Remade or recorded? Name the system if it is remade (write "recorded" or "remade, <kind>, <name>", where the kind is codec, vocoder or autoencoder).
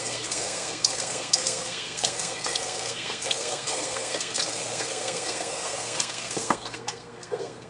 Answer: remade, codec, SNAC